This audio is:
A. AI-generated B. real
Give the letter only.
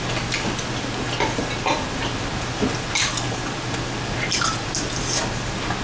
B